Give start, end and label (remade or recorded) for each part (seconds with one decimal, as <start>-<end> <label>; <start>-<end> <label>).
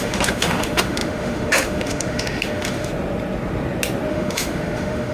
0.0-2.9 remade; 2.9-4.1 recorded; 4.1-5.1 remade